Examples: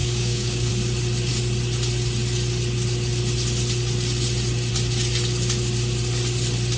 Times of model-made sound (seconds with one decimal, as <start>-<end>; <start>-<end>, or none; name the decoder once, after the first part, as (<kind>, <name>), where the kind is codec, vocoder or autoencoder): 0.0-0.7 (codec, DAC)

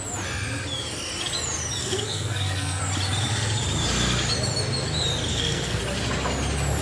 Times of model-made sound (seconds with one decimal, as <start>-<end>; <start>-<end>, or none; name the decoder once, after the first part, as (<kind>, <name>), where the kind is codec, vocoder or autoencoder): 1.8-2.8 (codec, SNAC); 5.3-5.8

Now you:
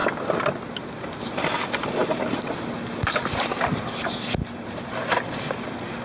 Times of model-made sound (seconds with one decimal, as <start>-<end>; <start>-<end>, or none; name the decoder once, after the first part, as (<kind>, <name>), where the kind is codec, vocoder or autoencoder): none

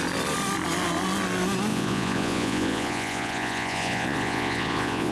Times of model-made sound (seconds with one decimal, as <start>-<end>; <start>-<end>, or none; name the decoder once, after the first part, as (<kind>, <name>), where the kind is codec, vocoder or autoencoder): 1.7-5.1 (vocoder, Vocos)

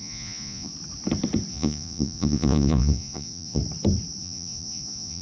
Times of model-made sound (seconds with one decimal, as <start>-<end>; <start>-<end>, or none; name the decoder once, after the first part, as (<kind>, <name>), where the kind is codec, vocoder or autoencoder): 0.0-0.7 (vocoder, Vocos); 1.5-3.6; 4.2-5.2